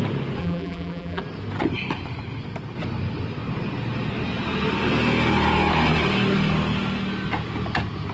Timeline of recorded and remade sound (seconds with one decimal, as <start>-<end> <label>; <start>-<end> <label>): 0.0-0.4 recorded; 0.4-1.2 remade; 1.2-8.1 recorded